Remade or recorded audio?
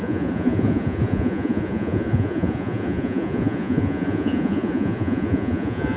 remade